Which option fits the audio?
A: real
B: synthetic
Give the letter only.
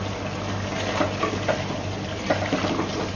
A